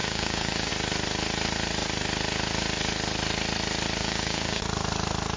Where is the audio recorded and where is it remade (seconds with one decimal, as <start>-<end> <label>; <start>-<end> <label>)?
0.0-0.7 remade; 0.7-4.0 recorded; 4.0-4.6 remade; 4.6-5.4 recorded